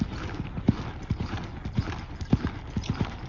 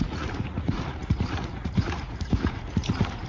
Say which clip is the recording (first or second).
first